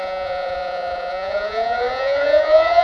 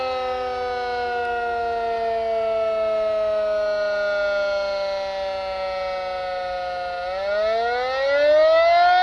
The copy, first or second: first